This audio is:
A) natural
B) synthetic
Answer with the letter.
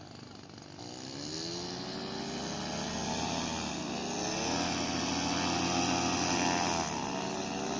A